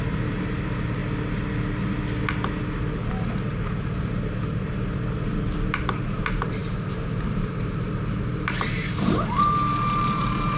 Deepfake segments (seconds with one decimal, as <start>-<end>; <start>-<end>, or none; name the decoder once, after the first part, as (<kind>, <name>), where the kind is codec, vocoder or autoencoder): 0.0-1.0 (vocoder, BigVGAN v2); 2.6-10.6

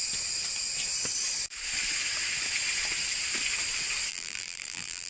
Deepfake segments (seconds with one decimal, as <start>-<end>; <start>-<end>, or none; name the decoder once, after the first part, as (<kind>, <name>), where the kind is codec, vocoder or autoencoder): 4.1-5.1 (vocoder, BigVGAN v2)

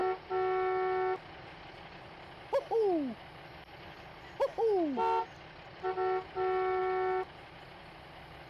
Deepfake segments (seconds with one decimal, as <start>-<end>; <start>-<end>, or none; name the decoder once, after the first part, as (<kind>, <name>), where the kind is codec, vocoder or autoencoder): none

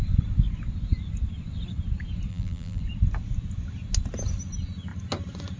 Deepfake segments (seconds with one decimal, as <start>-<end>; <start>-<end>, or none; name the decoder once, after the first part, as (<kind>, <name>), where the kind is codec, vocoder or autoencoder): 2.3-2.8 (vocoder, BigVGAN v2)

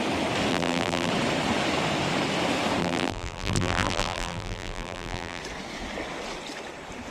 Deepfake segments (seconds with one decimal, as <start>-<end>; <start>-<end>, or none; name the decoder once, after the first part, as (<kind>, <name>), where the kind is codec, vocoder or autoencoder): 0.5-1.1 (vocoder, BigVGAN v2); 2.8-5.4